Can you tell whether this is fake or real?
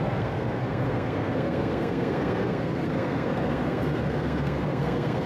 fake